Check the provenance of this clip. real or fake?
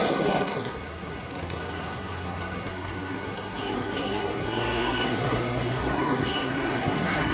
fake